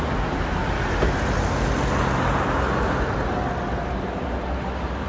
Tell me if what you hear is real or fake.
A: real